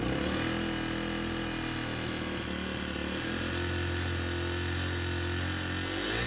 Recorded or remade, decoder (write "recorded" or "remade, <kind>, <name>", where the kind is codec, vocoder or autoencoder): recorded